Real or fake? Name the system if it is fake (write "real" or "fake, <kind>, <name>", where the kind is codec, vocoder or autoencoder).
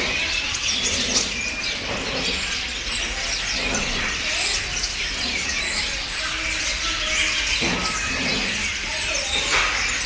real